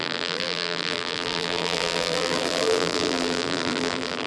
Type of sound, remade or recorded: remade